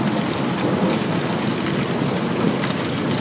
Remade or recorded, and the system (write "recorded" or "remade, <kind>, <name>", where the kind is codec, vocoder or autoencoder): recorded